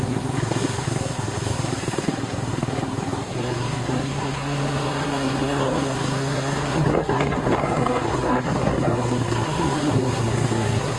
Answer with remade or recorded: remade